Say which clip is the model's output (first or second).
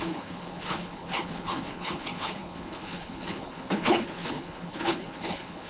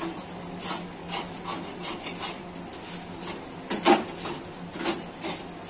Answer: first